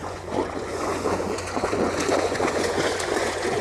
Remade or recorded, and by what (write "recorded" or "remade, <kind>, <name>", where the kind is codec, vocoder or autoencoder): remade, vocoder, Vocos